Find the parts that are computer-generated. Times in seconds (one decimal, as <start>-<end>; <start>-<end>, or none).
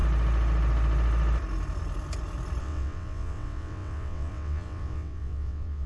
2.6-5.9